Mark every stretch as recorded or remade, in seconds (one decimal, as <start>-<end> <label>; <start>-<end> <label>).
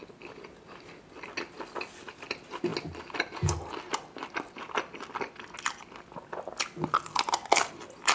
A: 0.0-8.1 recorded